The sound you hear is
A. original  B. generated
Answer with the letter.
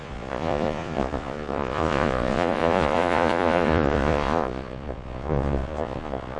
B